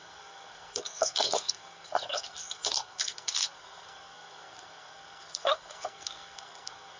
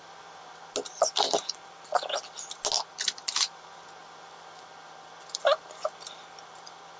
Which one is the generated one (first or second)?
first